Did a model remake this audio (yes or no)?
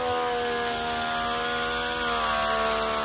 no